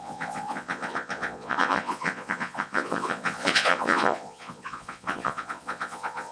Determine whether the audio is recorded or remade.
remade